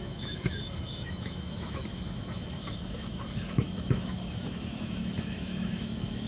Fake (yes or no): yes